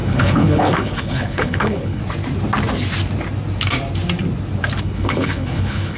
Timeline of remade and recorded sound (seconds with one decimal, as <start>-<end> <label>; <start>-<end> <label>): 0.0-2.0 remade; 2.0-4.8 recorded; 4.8-6.0 remade